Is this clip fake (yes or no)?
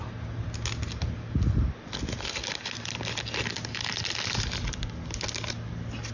no